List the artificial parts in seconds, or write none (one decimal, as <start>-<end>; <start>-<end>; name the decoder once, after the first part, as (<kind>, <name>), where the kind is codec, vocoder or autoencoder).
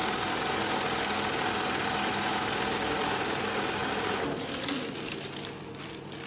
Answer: none